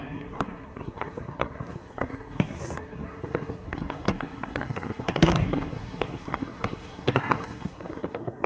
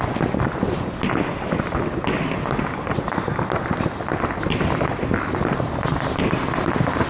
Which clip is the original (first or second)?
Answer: second